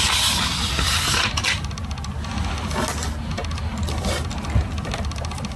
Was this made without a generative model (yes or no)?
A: yes